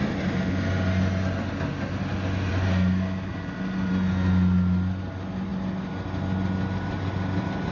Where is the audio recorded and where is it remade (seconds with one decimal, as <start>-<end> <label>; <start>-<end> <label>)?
0.0-7.7 recorded